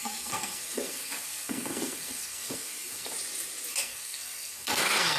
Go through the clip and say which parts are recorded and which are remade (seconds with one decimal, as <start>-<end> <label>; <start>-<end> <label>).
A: 0.0-3.1 remade; 3.1-3.7 recorded; 3.7-5.2 remade